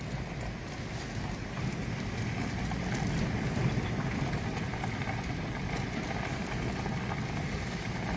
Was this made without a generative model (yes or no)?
yes